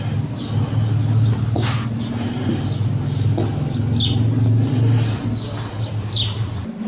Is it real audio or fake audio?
real